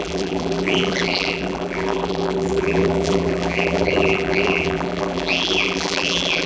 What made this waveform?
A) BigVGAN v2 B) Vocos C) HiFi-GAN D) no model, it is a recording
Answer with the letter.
A